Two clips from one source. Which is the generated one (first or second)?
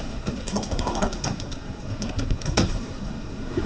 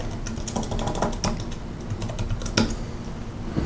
first